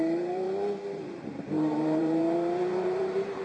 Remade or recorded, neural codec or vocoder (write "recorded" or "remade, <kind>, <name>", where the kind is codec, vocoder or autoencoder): remade, vocoder, BigVGAN v2